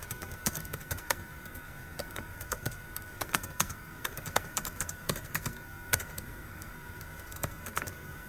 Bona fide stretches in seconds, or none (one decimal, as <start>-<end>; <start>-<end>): none

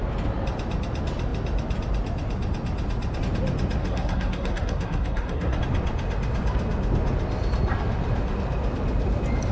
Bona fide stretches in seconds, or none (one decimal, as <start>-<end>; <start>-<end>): 0.0-3.8; 5.6-9.5